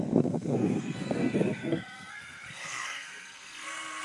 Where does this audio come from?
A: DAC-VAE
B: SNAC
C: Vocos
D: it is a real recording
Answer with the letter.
B